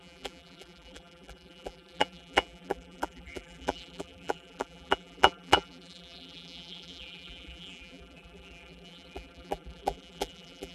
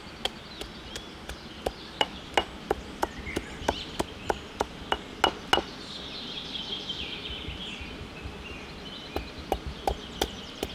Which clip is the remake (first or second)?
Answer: first